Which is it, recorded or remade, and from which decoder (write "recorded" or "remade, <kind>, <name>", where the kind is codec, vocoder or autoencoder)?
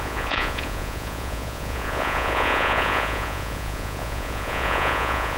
remade, vocoder, Vocos